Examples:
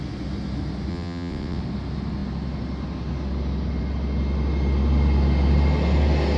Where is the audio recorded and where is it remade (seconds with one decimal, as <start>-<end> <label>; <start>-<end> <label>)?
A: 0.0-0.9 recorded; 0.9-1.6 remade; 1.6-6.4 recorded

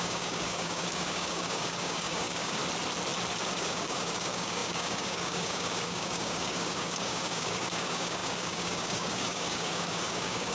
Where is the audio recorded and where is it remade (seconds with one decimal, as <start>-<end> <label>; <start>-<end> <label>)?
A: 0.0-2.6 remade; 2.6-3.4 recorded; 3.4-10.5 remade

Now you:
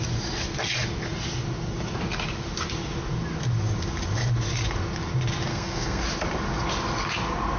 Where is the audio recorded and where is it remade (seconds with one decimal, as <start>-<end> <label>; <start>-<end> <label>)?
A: 0.0-5.5 recorded; 5.5-6.0 remade; 6.0-7.6 recorded

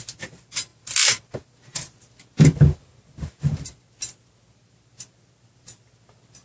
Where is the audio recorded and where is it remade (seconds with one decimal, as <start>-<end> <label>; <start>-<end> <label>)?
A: 0.0-6.4 recorded

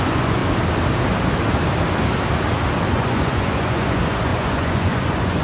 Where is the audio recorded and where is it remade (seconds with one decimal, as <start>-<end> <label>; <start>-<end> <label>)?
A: 0.0-0.4 remade; 0.4-2.9 recorded; 2.9-5.4 remade